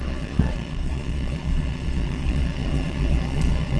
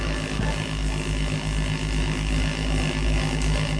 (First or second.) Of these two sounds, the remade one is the first